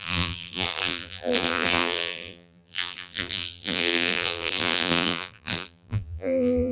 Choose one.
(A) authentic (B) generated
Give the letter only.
B